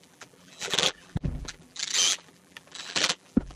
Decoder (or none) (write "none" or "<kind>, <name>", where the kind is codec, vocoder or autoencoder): vocoder, BigVGAN v2